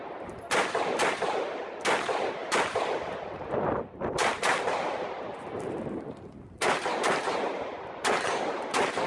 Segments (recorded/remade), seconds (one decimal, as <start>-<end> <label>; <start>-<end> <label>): 0.0-9.1 remade